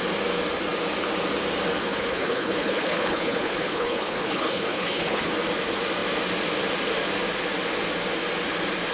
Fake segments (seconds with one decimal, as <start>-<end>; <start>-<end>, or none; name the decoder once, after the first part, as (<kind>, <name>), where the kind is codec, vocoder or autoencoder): 1.8-5.3 (codec, HILCodec)